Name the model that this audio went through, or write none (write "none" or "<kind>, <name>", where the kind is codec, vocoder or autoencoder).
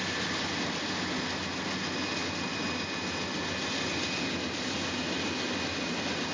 none